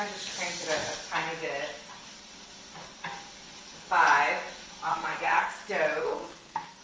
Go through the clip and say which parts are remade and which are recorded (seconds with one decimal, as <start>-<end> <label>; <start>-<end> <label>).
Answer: 0.0-4.9 recorded; 4.9-5.5 remade; 5.5-6.0 recorded; 6.0-6.8 remade